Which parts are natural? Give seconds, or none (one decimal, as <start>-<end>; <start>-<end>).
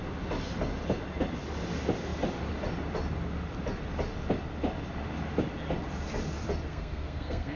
0.0-6.7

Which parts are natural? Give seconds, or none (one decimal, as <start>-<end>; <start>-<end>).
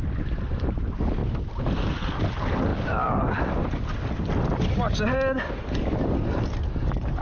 0.0-7.2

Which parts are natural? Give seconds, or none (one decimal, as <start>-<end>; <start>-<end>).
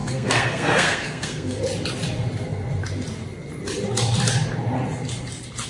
1.6-5.7